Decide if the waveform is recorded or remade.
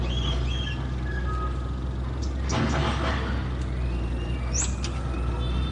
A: recorded